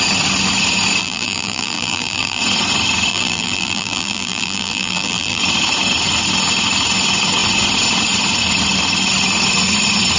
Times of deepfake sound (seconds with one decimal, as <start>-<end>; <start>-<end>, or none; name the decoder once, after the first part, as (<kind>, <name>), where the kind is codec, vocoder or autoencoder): 1.0-2.4 (vocoder, BigVGAN v2); 3.1-5.4